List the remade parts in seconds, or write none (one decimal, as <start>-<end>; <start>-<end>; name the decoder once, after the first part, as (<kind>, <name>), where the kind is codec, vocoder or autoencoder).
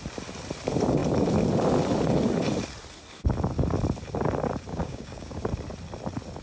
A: 4.7-5.4 (codec, DAC)